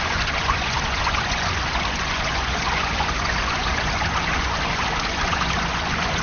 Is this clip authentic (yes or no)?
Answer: no